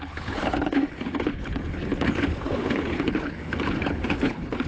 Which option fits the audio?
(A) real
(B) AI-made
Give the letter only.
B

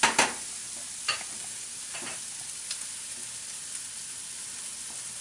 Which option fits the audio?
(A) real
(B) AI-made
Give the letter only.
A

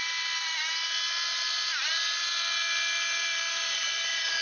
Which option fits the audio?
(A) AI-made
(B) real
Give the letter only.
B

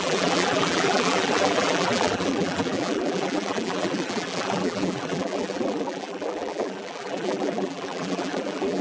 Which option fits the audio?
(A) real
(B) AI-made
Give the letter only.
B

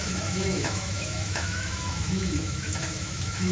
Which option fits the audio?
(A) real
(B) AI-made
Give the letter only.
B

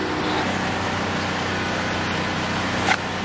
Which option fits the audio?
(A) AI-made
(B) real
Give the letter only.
B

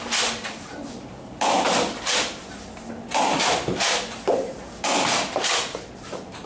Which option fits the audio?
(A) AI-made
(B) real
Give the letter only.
B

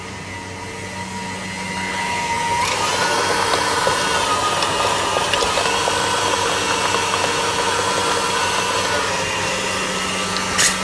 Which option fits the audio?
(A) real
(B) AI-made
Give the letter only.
A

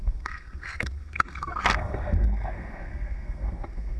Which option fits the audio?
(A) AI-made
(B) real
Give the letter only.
A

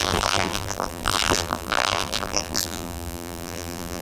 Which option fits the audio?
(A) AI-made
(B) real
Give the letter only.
A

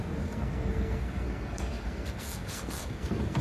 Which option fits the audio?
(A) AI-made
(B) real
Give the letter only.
A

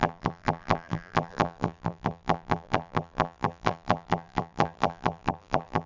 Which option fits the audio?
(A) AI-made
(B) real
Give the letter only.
A